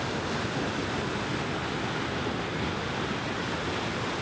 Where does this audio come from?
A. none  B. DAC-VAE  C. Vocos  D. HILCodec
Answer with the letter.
A